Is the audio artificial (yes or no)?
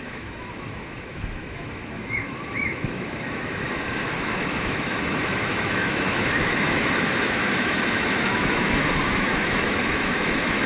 yes